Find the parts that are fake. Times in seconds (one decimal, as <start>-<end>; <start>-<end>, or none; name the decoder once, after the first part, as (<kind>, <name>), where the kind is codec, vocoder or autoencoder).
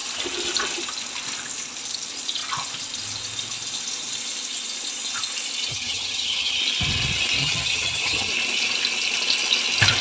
5.7-6.6 (vocoder, HiFi-GAN); 7.4-8.3